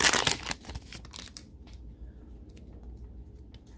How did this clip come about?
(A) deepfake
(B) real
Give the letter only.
B